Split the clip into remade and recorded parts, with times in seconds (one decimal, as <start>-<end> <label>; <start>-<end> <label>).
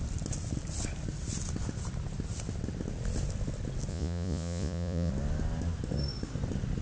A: 0.0-3.9 recorded; 3.9-5.1 remade; 5.1-6.8 recorded